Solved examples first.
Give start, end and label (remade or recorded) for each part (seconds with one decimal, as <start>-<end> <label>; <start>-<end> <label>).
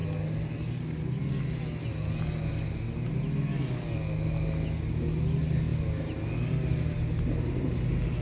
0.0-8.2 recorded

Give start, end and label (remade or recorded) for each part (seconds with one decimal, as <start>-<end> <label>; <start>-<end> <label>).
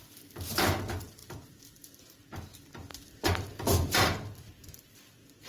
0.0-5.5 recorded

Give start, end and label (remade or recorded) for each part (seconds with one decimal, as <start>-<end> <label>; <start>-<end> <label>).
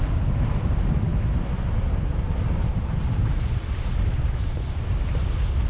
0.0-5.7 recorded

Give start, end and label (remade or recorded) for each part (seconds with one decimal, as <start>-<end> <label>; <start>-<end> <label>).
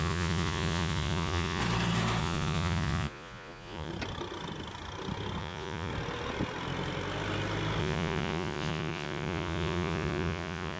0.0-1.6 remade; 1.6-2.2 recorded; 2.2-3.9 remade; 3.9-5.4 recorded; 5.4-5.9 remade; 5.9-7.8 recorded; 7.8-10.8 remade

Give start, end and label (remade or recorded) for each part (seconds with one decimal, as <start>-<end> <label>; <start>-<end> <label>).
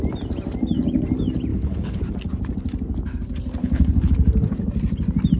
0.0-1.5 recorded; 1.5-2.0 remade; 2.0-3.6 recorded; 3.6-4.1 remade; 4.1-5.4 recorded